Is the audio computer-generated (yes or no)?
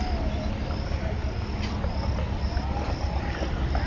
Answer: no